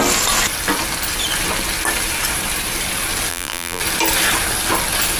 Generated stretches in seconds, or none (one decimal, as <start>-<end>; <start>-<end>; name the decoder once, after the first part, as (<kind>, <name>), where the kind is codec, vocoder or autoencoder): 3.3-3.8 (vocoder, BigVGAN v2)